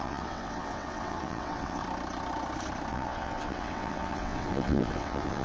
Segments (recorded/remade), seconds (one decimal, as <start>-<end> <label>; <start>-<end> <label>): 0.0-1.8 remade; 1.8-2.9 recorded; 2.9-5.4 remade